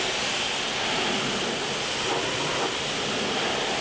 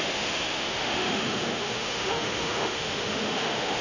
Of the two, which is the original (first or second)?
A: first